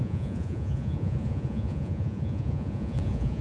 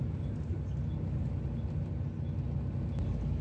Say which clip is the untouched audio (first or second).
second